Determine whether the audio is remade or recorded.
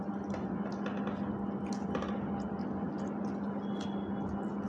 recorded